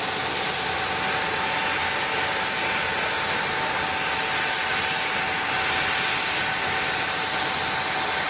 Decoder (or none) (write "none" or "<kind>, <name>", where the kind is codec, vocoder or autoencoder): none